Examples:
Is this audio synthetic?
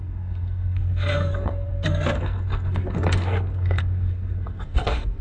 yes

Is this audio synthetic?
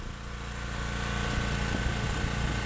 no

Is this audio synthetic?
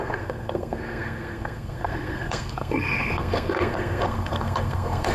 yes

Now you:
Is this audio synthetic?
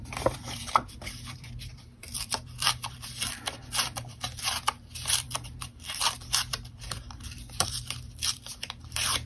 yes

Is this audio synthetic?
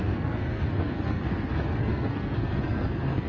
yes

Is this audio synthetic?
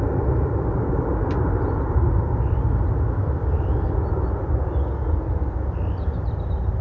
no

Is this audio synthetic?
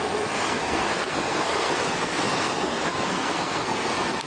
yes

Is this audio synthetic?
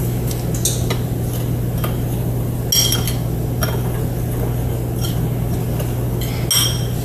no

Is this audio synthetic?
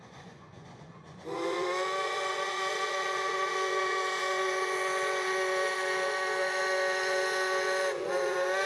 yes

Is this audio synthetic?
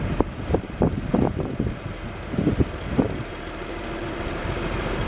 yes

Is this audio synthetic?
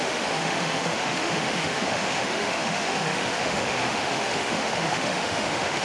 yes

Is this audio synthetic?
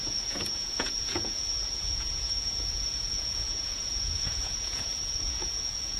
yes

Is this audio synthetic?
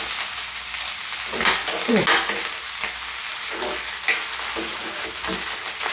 no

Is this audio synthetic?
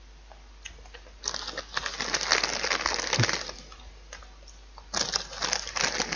no